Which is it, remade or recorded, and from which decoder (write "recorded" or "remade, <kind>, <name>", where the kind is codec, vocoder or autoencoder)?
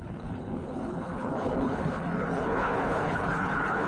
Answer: remade, codec, HILCodec